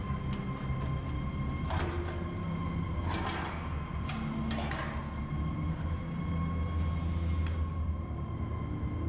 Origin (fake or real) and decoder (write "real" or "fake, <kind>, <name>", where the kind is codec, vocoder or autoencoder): real